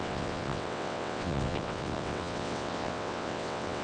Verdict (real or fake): fake